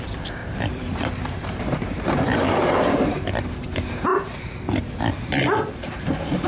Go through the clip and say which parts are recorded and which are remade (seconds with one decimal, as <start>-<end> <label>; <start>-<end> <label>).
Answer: 0.0-0.4 recorded; 0.4-3.3 remade; 3.3-6.5 recorded

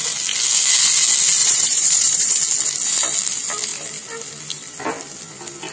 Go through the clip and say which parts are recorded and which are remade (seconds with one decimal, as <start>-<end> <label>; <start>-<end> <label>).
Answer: 0.0-1.4 recorded; 1.4-2.4 remade; 2.4-5.7 recorded

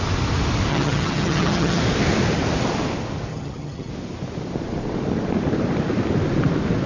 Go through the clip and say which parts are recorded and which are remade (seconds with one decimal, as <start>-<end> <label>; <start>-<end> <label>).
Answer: 0.0-0.7 recorded; 0.7-1.8 remade; 1.8-3.3 recorded; 3.3-3.9 remade; 3.9-6.9 recorded

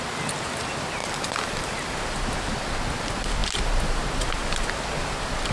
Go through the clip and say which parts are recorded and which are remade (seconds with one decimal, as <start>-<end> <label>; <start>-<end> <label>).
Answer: 0.0-1.0 recorded; 1.0-1.7 remade; 1.7-5.5 recorded

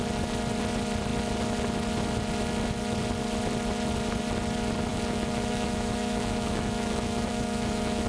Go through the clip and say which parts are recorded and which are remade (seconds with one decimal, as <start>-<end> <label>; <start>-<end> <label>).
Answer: 0.0-4.9 recorded; 4.9-8.1 remade

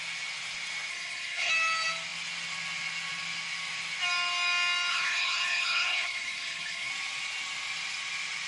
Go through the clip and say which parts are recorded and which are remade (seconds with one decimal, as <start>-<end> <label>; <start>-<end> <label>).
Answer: 0.0-0.9 recorded; 0.9-1.5 remade; 1.5-4.9 recorded; 4.9-6.9 remade; 6.9-8.5 recorded